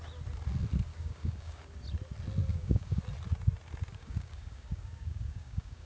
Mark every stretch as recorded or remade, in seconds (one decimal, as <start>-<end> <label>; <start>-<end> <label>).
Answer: 0.0-0.9 recorded; 0.9-1.6 remade; 1.6-2.5 recorded; 2.5-3.0 remade; 3.0-3.9 recorded; 3.9-5.9 remade